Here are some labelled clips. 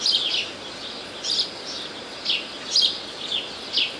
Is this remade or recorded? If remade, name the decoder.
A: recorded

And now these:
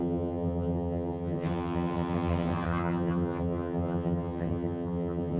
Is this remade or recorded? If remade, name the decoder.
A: remade, vocoder, HiFi-GAN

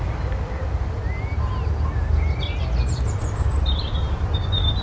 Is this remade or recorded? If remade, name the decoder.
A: recorded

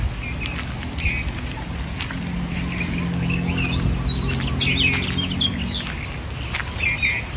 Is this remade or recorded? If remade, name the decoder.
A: recorded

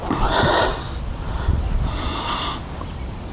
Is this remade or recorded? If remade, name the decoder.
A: recorded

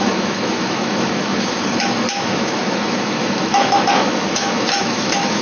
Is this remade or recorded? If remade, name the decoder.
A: remade, autoencoder, DAC-VAE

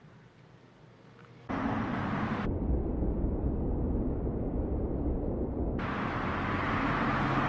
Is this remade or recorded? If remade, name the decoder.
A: recorded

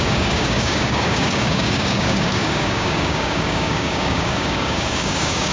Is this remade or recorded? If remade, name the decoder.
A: remade, codec, DAC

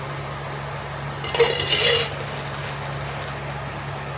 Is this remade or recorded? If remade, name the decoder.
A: recorded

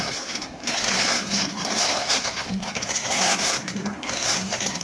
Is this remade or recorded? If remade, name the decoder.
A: remade, codec, SNAC